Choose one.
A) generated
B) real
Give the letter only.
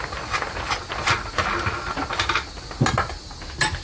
B